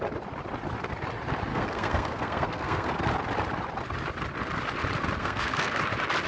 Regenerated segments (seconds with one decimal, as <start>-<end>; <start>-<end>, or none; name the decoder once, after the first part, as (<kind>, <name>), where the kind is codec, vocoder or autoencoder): 1.5-2.9 (codec, SNAC); 5.2-5.8